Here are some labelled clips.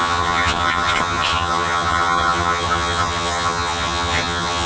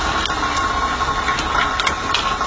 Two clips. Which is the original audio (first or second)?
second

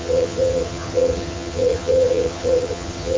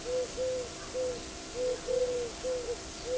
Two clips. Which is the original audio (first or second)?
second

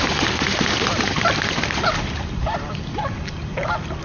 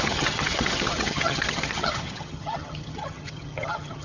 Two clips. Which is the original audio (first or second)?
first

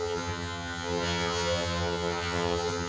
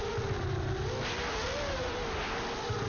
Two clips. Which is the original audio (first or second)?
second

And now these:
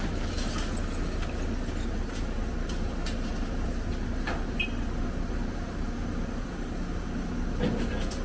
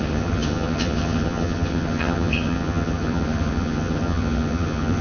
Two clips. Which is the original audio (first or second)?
first